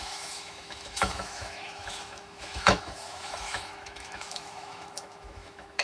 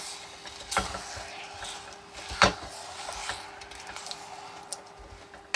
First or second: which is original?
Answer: second